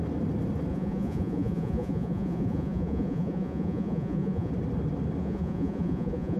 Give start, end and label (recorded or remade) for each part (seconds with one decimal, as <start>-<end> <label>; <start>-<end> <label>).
0.0-0.7 recorded; 0.7-4.5 remade; 4.5-5.2 recorded; 5.2-6.4 remade